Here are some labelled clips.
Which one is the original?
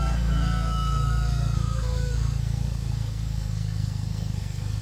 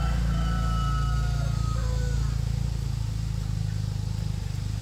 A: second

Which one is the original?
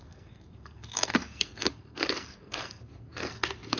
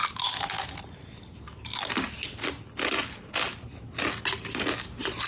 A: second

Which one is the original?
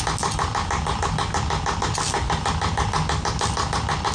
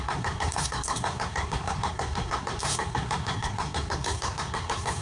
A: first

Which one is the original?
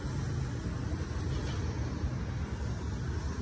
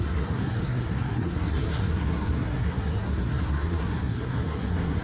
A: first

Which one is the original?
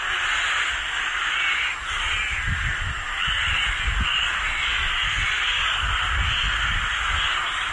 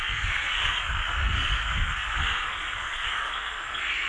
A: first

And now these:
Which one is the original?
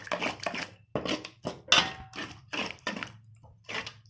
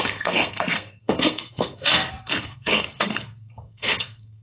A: first